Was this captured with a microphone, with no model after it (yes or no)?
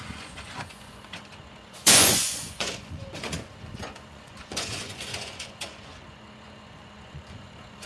no